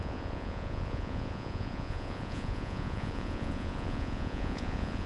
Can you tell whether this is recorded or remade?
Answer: remade